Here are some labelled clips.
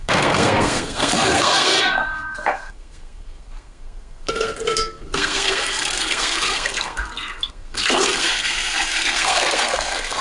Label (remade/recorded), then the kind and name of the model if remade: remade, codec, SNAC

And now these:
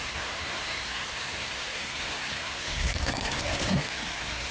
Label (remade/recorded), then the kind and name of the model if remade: remade, codec, SNAC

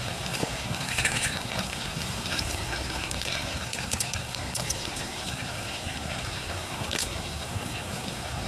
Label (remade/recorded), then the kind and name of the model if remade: remade, codec, SNAC